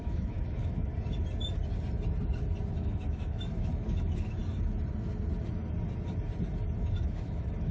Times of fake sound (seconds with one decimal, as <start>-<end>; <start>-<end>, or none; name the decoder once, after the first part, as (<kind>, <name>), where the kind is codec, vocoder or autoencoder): 0.0-0.9 (autoencoder, DAC-VAE); 2.7-4.4; 6.8-7.7